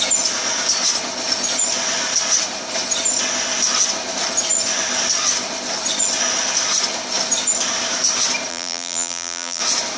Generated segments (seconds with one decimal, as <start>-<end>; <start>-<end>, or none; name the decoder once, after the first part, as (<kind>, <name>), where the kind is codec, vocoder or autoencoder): 8.5-9.6 (vocoder, BigVGAN v2)